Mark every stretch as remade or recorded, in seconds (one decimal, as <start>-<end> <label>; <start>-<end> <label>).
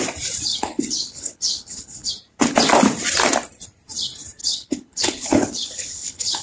0.0-0.5 recorded; 0.5-2.1 remade; 2.1-4.4 recorded; 4.4-6.4 remade